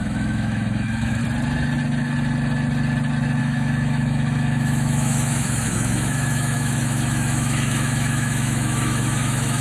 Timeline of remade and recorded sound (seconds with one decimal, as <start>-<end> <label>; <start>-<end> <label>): 0.0-1.2 remade; 1.2-3.4 recorded; 3.4-9.6 remade

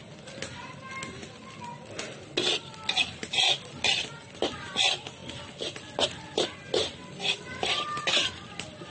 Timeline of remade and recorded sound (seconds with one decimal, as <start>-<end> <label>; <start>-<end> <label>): 0.0-8.9 recorded